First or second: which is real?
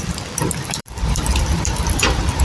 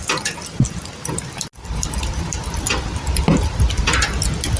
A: second